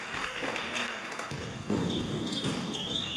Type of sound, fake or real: fake